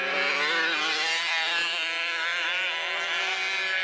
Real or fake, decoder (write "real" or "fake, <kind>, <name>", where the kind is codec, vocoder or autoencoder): real